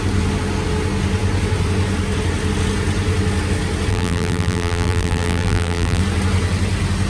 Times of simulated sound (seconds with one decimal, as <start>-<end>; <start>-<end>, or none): 3.9-6.0